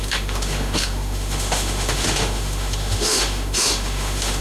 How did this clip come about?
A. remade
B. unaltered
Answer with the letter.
A